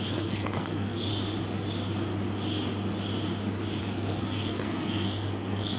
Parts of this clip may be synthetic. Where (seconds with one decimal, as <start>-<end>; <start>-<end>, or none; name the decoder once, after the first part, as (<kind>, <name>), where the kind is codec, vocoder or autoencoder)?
0.0-1.1 (codec, SNAC); 3.8-5.8